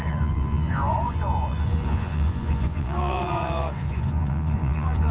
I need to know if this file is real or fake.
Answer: fake